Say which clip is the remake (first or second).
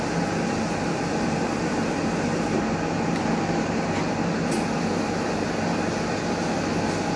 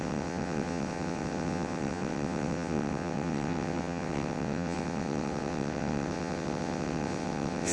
second